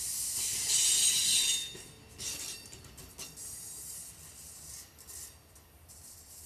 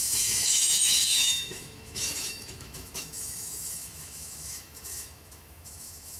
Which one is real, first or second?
first